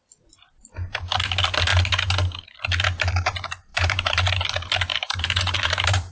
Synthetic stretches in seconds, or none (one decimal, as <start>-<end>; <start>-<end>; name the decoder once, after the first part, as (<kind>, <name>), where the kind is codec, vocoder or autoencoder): 3.7-4.3 (vocoder, BigVGAN v2); 4.9-6.1

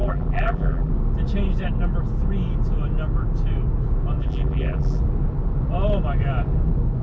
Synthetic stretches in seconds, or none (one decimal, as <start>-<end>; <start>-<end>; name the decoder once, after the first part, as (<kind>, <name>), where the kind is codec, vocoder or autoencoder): 0.0-0.9 (vocoder, BigVGAN v2); 4.2-5.0

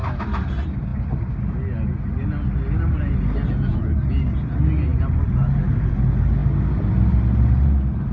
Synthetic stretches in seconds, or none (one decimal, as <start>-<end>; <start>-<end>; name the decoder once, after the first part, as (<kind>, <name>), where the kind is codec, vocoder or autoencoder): none

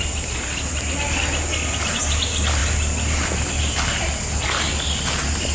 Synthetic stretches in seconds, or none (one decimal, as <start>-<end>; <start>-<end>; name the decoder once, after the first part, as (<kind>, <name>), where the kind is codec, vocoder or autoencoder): none

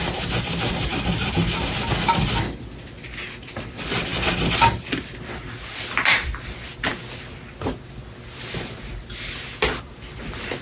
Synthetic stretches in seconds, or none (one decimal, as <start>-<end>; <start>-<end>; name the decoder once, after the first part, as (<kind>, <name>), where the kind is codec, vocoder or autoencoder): 0.9-1.6 (vocoder, BigVGAN v2)